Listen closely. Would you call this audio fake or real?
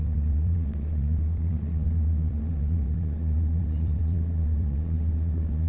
fake